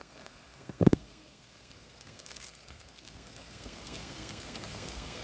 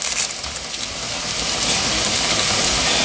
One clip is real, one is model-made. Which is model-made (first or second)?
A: first